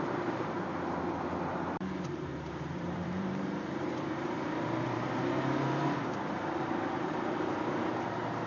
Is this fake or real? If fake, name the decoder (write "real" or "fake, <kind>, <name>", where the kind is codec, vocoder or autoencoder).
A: fake, vocoder, BigVGAN v2